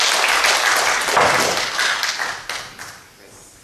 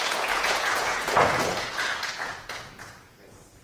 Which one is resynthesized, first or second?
second